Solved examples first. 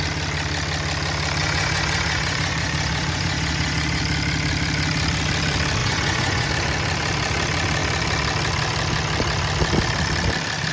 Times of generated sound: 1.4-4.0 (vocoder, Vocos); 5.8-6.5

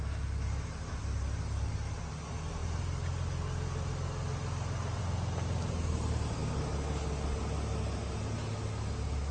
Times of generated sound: none

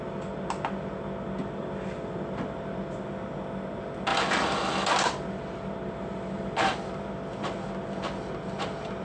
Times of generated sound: none

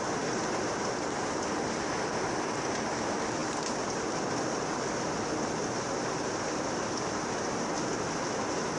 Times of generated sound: none

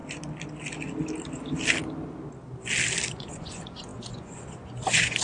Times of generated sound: 3.1-5.2 (vocoder, Vocos)

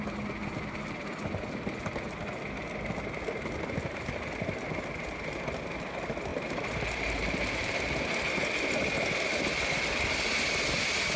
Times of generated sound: 6.3-7.9 (vocoder, BigVGAN v2)